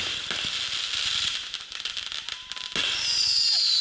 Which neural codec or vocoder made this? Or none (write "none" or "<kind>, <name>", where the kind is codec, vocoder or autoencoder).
none